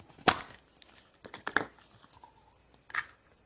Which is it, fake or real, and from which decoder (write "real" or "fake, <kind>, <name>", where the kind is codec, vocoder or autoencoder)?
real